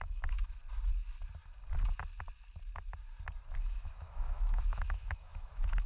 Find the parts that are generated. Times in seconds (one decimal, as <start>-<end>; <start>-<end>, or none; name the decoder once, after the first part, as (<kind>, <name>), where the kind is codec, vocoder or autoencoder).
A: 0.0-0.6 (autoencoder, DAC-VAE); 3.6-5.9